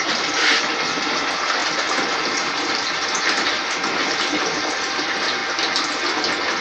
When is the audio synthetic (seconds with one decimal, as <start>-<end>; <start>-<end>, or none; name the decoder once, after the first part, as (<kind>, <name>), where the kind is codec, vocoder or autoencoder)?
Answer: 0.0-5.4 (vocoder, BigVGAN v2)